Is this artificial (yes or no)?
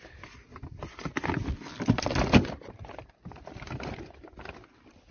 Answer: no